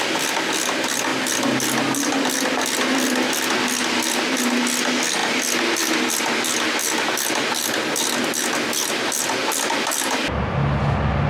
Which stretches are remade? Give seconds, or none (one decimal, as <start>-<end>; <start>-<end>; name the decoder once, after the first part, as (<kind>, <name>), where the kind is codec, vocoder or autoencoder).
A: none